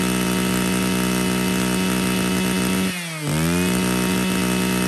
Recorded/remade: recorded